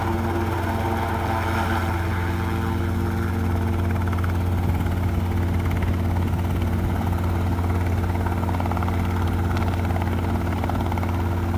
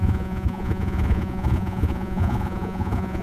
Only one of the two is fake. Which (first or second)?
second